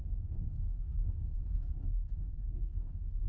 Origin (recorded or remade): remade